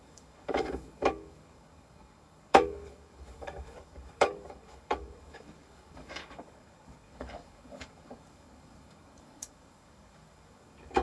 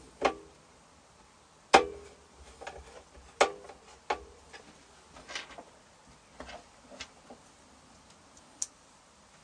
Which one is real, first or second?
second